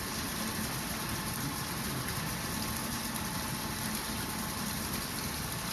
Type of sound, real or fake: real